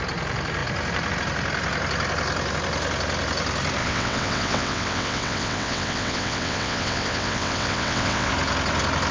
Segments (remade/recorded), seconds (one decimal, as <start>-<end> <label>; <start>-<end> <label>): 0.0-3.8 recorded; 3.8-8.3 remade; 8.3-9.1 recorded